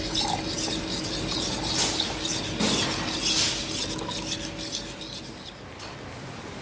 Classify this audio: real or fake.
real